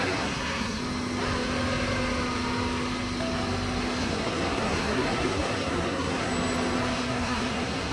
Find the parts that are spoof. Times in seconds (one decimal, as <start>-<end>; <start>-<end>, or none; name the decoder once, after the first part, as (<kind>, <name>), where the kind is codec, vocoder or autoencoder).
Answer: 0.0-0.8 (codec, SNAC); 4.0-6.3; 6.8-7.9